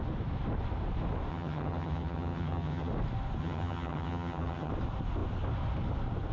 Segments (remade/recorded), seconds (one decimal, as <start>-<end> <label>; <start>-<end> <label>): 0.0-1.3 recorded; 1.3-2.9 remade; 2.9-3.4 recorded; 3.4-4.7 remade; 4.7-6.3 recorded